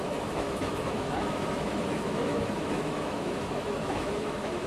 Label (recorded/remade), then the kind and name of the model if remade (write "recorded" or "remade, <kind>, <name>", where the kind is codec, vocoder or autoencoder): remade, autoencoder, DAC-VAE